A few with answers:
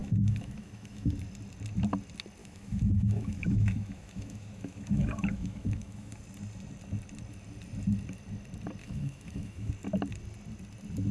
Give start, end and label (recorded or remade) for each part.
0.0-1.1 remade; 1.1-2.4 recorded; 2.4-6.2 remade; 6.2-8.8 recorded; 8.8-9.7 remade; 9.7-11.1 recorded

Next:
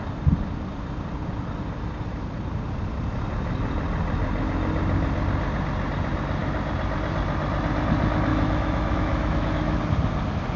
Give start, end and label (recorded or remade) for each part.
0.0-8.3 recorded; 8.3-9.8 remade; 9.8-10.6 recorded

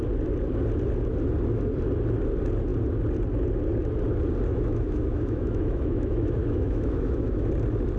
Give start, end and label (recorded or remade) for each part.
0.0-4.5 recorded; 4.5-7.5 remade; 7.5-8.0 recorded

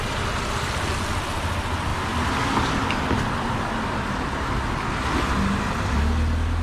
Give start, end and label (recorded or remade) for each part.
0.0-6.6 recorded